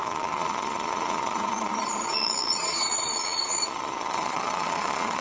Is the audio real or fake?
fake